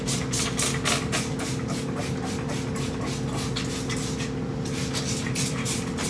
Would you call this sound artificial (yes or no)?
no